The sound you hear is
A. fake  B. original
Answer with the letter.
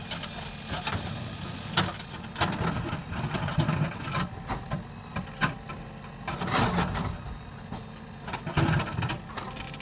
B